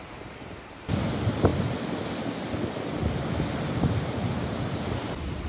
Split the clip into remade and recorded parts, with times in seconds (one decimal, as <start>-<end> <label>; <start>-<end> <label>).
0.0-5.5 recorded